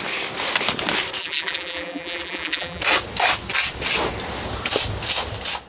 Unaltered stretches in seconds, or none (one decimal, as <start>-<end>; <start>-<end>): 0.0-1.2; 2.8-5.7